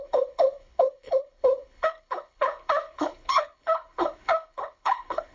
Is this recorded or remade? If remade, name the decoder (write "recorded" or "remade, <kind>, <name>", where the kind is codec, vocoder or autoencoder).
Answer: remade, codec, HILCodec